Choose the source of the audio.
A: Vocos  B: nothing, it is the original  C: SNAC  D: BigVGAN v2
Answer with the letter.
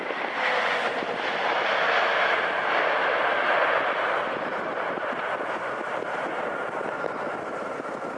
B